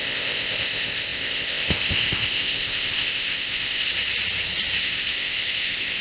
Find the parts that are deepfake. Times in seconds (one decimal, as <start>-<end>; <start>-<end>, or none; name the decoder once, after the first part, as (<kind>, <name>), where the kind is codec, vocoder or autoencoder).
0.0-3.9 (codec, ZipCodec); 4.8-6.0

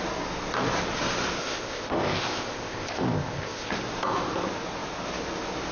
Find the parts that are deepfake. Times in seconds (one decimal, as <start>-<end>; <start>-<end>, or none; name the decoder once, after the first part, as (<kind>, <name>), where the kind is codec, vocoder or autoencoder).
1.4-3.7 (codec, ZipCodec)

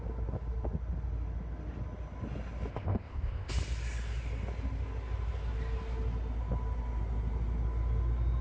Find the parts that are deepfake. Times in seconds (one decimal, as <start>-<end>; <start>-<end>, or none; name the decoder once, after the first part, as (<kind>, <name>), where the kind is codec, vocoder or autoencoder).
2.7-3.5 (codec, ZipCodec)

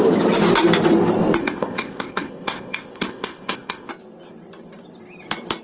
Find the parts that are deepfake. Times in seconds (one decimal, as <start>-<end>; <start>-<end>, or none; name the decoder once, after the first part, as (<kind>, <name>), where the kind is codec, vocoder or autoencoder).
1.4-3.9 (codec, ZipCodec)

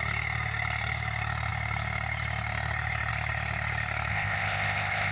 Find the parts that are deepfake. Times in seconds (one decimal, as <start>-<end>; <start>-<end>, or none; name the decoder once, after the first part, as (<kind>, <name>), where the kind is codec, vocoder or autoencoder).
4.1-5.1 (codec, ZipCodec)